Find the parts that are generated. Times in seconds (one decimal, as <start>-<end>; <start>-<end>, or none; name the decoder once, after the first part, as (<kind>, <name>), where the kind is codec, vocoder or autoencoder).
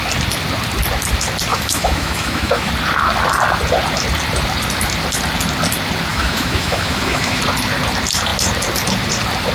1.5-2.7 (autoencoder, DAC-VAE); 6.1-7.4